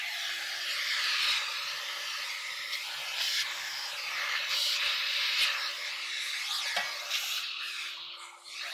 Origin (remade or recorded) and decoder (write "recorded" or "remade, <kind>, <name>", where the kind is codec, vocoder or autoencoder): recorded